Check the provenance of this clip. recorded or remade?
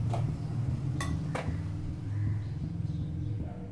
recorded